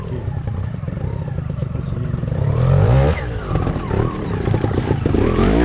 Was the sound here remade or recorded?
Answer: remade